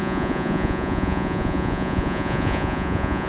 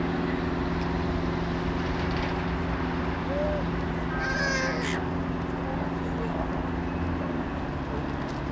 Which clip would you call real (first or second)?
second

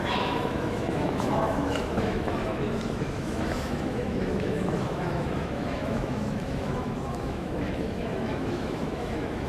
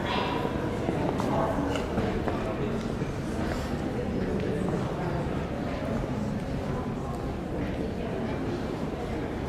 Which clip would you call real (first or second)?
second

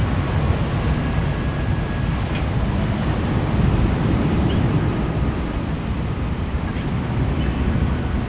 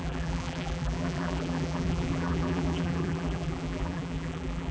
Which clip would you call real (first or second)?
first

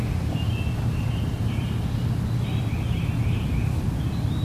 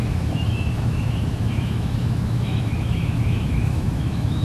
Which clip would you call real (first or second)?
first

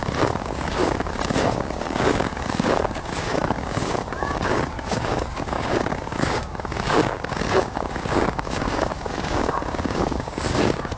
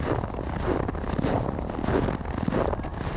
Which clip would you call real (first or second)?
second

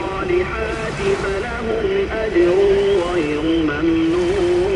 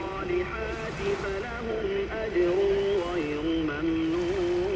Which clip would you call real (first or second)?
second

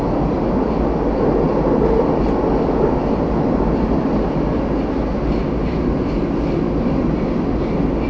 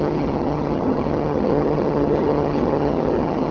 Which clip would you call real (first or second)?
first